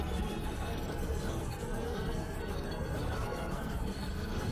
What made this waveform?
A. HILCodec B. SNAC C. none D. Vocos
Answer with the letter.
B